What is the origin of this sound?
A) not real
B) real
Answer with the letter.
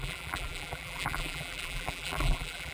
A